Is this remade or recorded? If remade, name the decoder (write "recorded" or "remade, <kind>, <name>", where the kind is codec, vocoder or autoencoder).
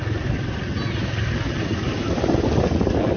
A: recorded